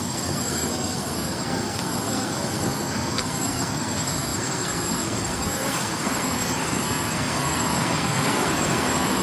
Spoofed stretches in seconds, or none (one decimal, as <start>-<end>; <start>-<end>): 0.0-9.2